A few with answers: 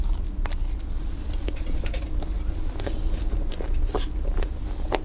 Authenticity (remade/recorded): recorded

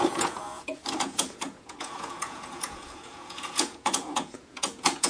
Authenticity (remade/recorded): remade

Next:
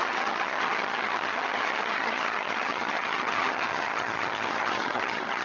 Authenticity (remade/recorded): remade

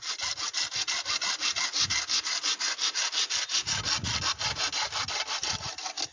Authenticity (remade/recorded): recorded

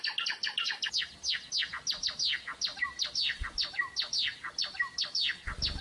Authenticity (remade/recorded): recorded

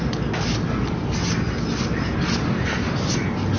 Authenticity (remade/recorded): recorded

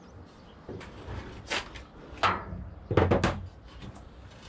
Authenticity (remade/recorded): recorded